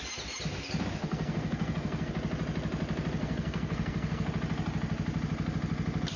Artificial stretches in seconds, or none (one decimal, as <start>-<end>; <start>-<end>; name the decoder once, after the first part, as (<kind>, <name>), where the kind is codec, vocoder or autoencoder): 1.0-2.1 (codec, SNAC); 3.2-4.3